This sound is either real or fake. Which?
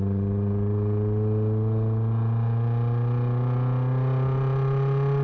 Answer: real